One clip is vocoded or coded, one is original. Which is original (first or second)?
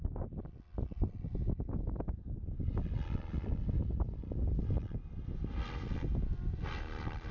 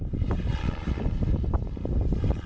first